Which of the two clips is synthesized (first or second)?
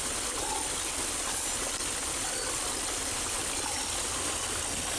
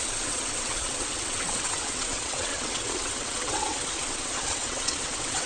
second